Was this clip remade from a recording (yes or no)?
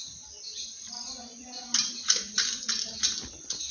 no